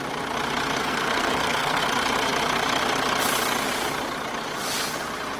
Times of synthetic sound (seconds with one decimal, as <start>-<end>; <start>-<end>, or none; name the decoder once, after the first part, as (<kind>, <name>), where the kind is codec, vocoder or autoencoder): 0.8-1.8 (codec, SNAC)